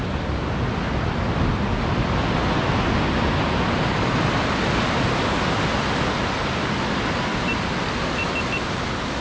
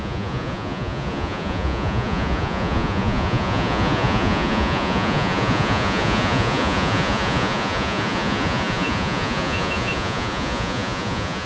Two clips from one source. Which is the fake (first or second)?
second